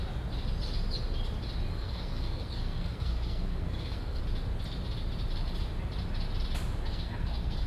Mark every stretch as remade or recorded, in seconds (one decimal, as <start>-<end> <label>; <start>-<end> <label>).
0.0-1.7 recorded; 1.7-4.2 remade; 4.2-6.9 recorded; 6.9-7.7 remade